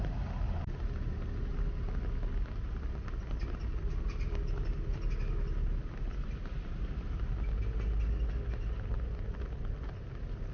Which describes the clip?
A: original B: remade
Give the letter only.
A